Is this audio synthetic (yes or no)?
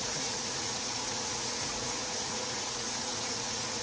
yes